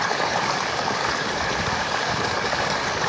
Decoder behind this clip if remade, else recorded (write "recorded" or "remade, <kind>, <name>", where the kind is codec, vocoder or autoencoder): remade, codec, DAC